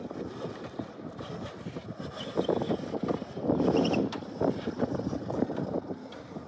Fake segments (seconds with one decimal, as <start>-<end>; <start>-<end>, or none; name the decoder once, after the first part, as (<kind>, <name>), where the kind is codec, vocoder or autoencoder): none